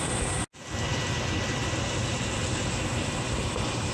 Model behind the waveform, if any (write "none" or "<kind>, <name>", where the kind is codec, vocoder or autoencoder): none